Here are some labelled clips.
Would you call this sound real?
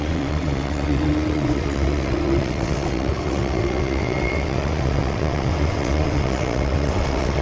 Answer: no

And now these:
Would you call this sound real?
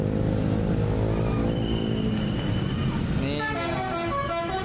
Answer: yes